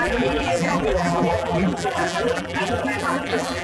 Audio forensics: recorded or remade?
remade